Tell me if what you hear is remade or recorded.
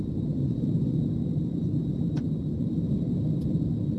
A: recorded